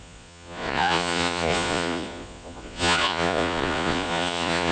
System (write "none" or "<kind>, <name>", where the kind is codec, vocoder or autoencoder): vocoder, Vocos